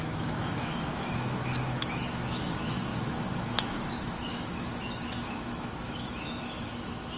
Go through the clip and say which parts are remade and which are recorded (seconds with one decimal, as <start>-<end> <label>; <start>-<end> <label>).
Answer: 0.0-7.2 remade